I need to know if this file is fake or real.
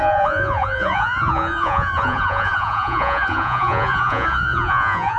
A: fake